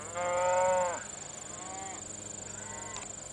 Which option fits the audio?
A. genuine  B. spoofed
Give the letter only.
A